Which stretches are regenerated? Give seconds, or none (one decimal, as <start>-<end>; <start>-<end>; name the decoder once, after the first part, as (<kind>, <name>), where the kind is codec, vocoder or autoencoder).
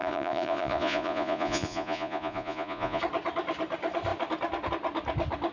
0.0-3.0 (vocoder, Vocos)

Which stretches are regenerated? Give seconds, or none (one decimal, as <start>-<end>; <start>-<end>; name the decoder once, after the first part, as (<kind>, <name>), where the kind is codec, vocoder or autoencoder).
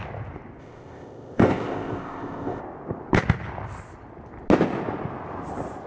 0.6-2.6 (codec, ZipCodec)